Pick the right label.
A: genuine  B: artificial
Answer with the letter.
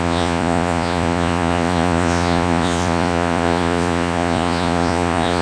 B